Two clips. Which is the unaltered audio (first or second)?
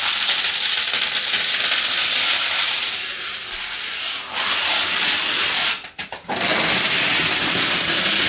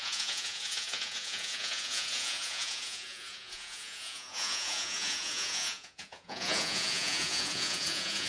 first